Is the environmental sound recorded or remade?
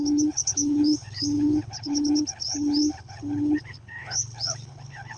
remade